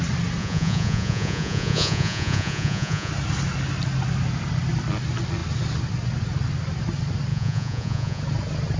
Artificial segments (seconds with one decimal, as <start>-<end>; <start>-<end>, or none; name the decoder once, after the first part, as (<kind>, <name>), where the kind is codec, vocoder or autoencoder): 0.4-3.1 (vocoder, Vocos); 7.3-8.2